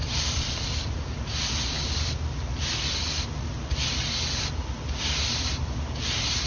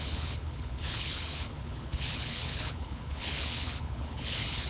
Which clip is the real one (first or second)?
first